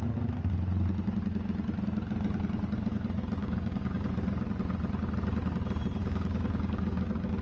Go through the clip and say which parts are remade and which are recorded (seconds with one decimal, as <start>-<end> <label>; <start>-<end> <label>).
0.0-3.4 recorded; 3.4-4.1 remade; 4.1-6.0 recorded; 6.0-7.4 remade